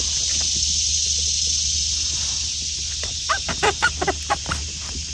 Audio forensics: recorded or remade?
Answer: recorded